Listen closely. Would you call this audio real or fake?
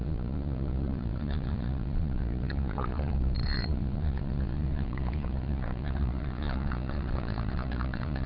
fake